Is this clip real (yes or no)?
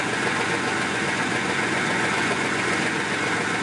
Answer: no